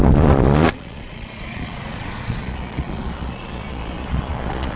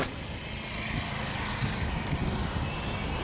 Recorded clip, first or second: second